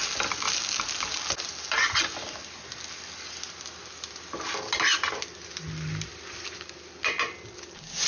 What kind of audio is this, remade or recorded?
recorded